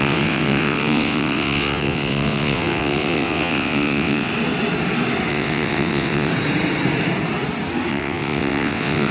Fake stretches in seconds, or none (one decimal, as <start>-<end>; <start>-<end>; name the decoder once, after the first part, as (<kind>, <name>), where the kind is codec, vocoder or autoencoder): 0.0-4.3 (vocoder, WaveNeXt); 5.3-6.3; 7.9-9.1